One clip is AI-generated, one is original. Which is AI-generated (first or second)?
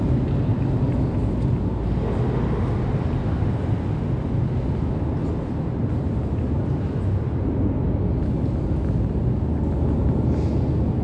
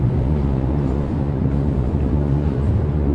second